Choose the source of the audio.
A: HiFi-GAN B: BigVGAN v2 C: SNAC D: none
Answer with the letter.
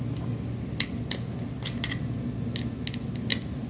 D